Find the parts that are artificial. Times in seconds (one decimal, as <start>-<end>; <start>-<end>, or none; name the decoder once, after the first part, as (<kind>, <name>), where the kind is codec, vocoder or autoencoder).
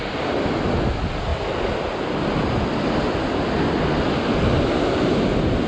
none